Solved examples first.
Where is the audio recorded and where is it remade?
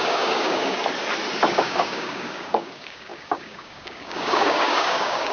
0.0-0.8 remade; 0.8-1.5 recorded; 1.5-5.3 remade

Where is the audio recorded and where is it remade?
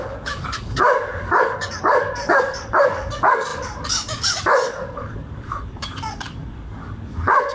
0.0-7.5 remade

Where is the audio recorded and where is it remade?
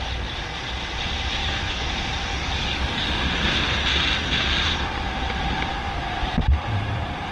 0.0-1.4 recorded; 1.4-1.9 remade; 1.9-2.3 recorded; 2.3-3.0 remade; 3.0-7.3 recorded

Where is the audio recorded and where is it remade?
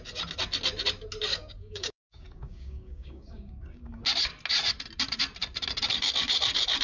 0.0-1.3 recorded; 1.3-4.0 remade; 4.0-6.8 recorded